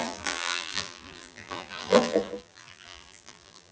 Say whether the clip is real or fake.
fake